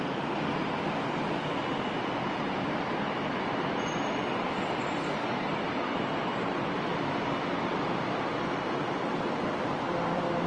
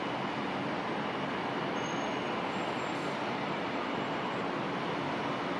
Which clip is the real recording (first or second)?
second